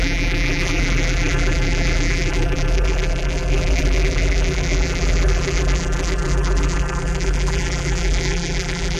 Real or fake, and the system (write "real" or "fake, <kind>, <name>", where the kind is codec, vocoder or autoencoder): fake, vocoder, BigVGAN v2